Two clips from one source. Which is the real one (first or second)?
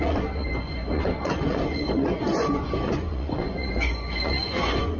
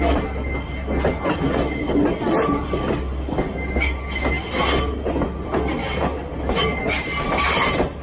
second